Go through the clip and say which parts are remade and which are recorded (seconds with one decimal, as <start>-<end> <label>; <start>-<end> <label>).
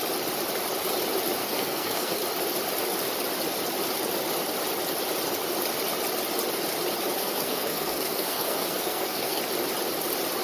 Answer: 0.0-1.4 recorded; 1.4-2.2 remade; 2.2-7.2 recorded; 7.2-9.4 remade; 9.4-10.4 recorded